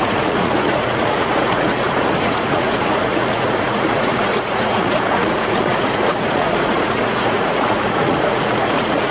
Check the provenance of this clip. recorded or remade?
remade